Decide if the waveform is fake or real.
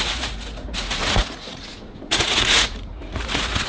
fake